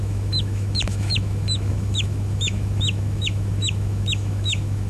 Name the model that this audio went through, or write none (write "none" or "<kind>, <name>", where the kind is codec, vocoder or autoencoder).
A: autoencoder, DAC-VAE